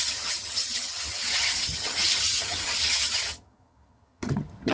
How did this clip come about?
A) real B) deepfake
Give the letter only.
B